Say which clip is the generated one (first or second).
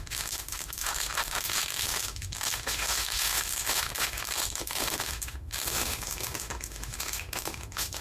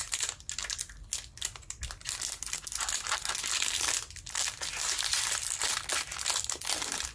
first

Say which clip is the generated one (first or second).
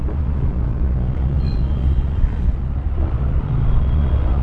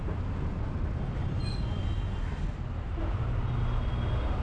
first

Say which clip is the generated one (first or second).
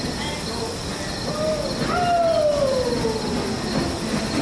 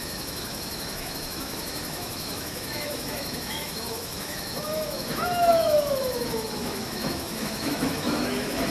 second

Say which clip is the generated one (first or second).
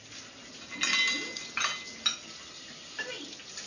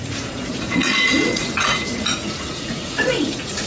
second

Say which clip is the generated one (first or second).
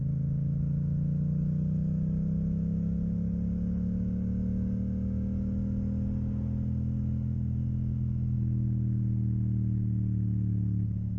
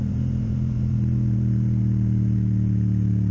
second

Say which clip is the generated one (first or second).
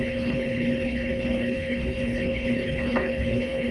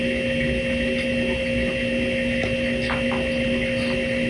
first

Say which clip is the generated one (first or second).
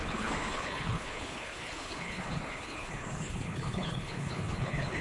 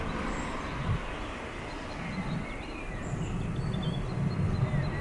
first